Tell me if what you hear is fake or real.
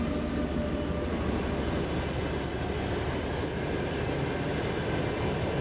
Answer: real